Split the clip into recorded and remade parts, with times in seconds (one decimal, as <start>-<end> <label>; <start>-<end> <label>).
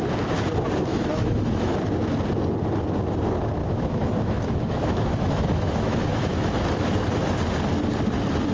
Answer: 0.0-0.9 recorded; 0.9-1.7 remade; 1.7-3.6 recorded; 3.6-6.7 remade; 6.7-8.5 recorded